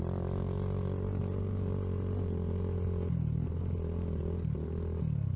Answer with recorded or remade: recorded